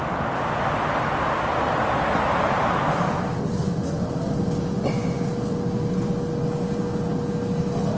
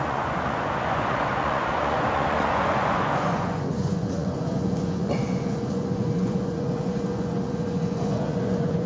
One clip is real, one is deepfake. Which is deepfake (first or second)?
second